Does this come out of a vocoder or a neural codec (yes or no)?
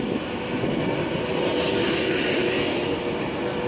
no